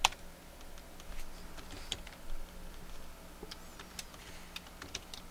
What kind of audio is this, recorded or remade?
recorded